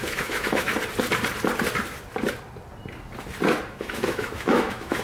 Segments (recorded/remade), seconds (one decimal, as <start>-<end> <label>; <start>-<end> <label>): 0.0-0.7 remade; 0.7-3.7 recorded; 3.7-5.0 remade